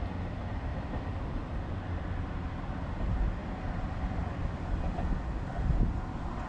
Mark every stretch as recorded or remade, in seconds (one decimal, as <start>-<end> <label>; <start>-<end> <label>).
0.0-0.7 recorded; 0.7-2.0 remade; 2.0-3.4 recorded; 3.4-4.4 remade; 4.4-6.5 recorded